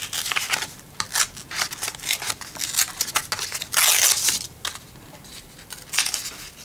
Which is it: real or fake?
real